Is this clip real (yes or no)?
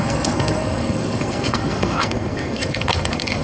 no